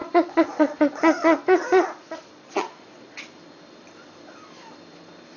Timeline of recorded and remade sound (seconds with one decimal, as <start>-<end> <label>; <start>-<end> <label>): 0.0-3.2 remade; 3.2-5.4 recorded

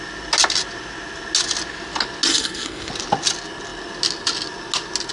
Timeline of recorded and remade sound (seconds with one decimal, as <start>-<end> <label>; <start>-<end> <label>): 0.0-2.3 recorded; 2.3-2.9 remade; 2.9-5.1 recorded

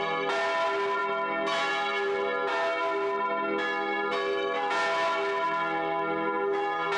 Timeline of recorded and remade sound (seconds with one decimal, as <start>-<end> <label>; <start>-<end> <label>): 0.0-7.0 recorded

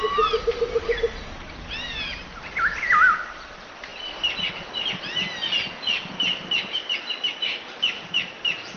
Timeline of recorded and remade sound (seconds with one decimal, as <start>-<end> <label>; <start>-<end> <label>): 0.0-8.8 recorded

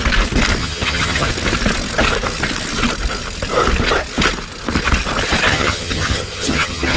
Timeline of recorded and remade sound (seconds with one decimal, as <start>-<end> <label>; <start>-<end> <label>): 0.0-0.6 recorded; 0.6-1.3 remade; 1.3-5.5 recorded; 5.5-7.0 remade